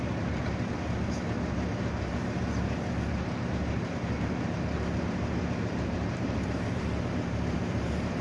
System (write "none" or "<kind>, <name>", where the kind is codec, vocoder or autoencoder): vocoder, BigVGAN v2